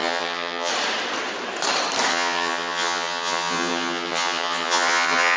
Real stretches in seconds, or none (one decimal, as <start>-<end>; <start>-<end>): 0.7-2.1